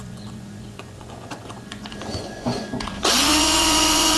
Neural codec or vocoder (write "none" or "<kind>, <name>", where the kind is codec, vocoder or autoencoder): vocoder, Vocos